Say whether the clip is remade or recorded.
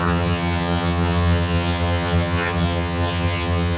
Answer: remade